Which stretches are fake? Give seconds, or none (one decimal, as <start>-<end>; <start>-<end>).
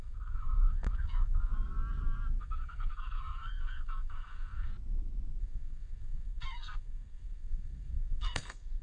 0.0-1.5; 2.4-4.7; 5.4-8.8